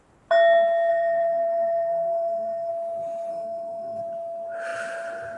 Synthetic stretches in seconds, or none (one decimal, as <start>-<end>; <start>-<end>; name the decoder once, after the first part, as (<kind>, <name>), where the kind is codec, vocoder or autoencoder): 0.9-2.7 (codec, SNAC); 3.3-4.0